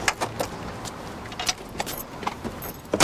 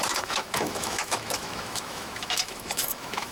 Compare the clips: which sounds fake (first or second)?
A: second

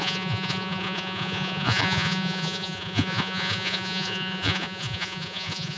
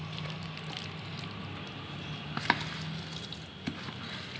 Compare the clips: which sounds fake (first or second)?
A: first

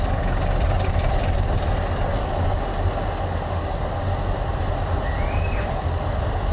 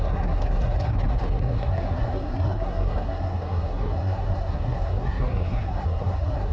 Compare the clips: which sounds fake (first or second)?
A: second